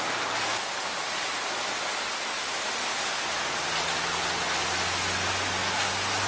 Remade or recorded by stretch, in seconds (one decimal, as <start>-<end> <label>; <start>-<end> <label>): 0.0-6.3 recorded